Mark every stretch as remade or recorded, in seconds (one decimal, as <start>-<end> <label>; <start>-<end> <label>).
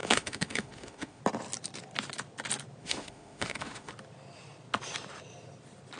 0.0-1.2 remade; 1.2-2.8 recorded; 2.8-3.9 remade; 3.9-6.0 recorded